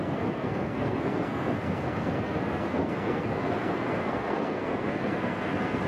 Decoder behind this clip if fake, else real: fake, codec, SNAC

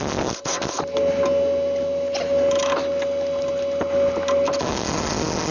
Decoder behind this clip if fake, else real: real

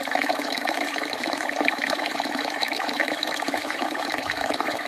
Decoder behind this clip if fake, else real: fake, autoencoder, DAC-VAE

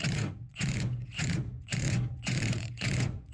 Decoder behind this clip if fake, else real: fake, vocoder, Vocos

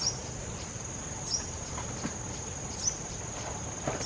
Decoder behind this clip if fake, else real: real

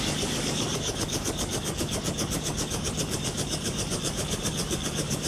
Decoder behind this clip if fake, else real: fake, codec, DAC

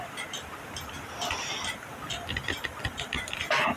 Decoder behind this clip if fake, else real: real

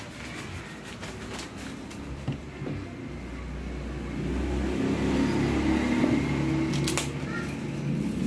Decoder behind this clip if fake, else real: real